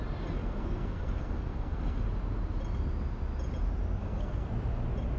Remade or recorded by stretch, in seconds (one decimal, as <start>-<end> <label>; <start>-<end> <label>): 0.0-0.4 recorded; 0.4-2.0 remade; 2.0-4.0 recorded; 4.0-4.5 remade; 4.5-5.2 recorded